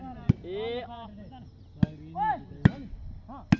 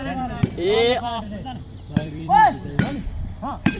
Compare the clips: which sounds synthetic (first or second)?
second